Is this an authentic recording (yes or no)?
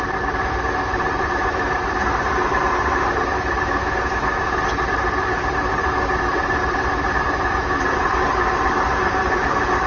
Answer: no